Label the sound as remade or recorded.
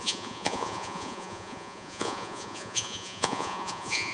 remade